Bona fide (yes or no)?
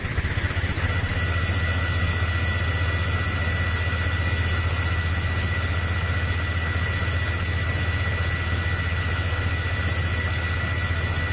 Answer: yes